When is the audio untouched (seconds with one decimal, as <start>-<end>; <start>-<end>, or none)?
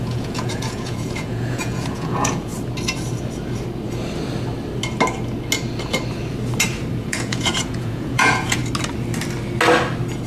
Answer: 2.5-6.9; 8.6-10.3